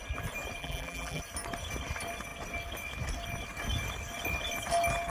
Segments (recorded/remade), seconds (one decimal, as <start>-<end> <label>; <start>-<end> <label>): 0.0-0.6 recorded; 0.6-1.2 remade; 1.2-5.1 recorded